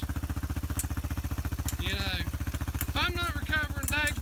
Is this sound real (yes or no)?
yes